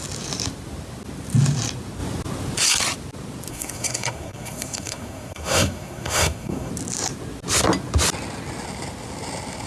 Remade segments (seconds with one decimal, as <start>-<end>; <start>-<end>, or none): 3.5-6.7